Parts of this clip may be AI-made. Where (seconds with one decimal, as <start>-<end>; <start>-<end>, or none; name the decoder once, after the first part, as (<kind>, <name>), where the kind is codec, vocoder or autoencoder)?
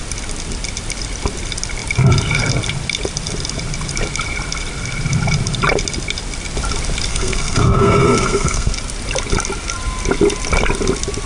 7.1-8.7 (codec, SNAC)